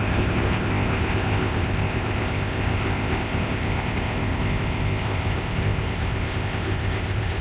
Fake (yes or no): yes